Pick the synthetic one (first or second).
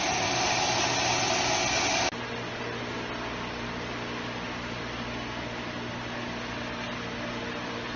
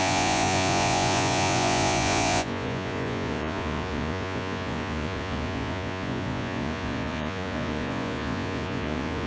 second